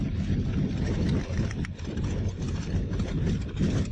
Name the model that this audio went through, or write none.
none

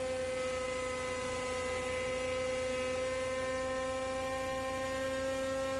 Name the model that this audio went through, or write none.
none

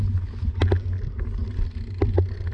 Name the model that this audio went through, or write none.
none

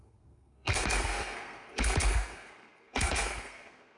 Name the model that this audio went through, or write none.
codec, SNAC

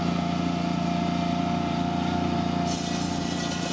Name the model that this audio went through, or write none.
none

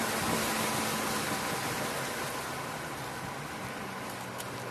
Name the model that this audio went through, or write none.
none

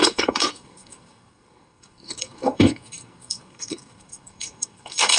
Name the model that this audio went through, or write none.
codec, SNAC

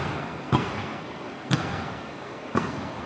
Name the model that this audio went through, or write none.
codec, SNAC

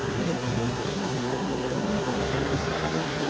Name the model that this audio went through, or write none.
codec, SNAC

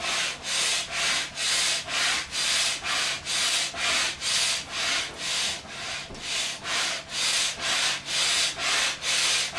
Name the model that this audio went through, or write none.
none